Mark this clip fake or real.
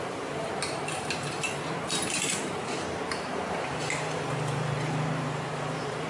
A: fake